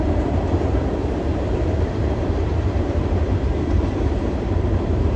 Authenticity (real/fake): fake